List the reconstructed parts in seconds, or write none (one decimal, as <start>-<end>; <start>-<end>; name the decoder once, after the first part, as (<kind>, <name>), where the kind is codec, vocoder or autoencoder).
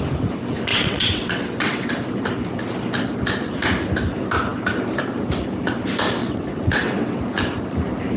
0.7-1.9 (vocoder, WaveNeXt); 6.2-7.2